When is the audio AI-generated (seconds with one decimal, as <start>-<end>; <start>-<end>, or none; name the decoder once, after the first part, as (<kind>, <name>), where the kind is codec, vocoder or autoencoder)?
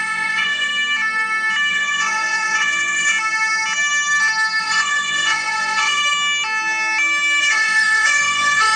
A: 0.0-0.7 (vocoder, Vocos); 1.7-3.1; 4.6-6.0; 7.4-8.8